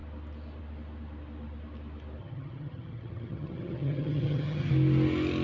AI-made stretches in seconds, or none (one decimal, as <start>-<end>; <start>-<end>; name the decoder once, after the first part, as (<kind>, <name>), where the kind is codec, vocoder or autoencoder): 2.2-4.7 (vocoder, HiFi-GAN)